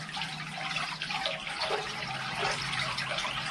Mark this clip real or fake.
fake